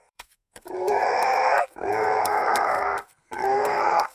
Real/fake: fake